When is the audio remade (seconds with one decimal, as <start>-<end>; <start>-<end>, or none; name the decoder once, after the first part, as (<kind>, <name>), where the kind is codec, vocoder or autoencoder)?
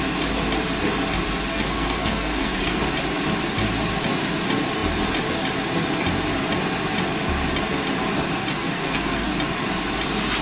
1.5-2.8 (codec, SNAC); 8.5-9.3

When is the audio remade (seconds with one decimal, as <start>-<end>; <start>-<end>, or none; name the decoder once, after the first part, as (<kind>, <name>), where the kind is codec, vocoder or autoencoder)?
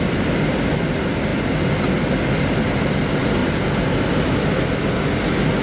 none